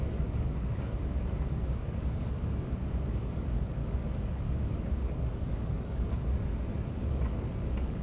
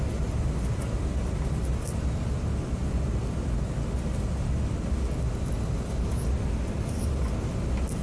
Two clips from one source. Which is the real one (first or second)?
second